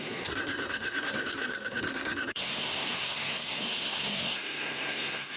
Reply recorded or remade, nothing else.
remade